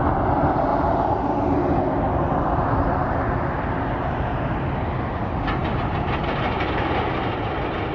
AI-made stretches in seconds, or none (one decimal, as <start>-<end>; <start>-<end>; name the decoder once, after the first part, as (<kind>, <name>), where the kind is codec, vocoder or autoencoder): none